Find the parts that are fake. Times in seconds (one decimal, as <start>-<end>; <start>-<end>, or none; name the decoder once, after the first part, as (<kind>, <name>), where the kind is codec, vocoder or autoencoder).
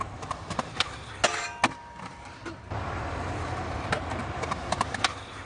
0.0-1.1 (vocoder, BigVGAN v2); 2.1-4.8